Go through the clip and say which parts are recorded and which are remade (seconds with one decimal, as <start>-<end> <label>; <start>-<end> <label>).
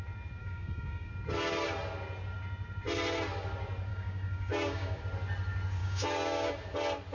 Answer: 0.0-0.4 recorded; 0.4-1.1 remade; 1.1-3.9 recorded; 3.9-5.0 remade; 5.0-5.8 recorded; 5.8-6.5 remade; 6.5-7.1 recorded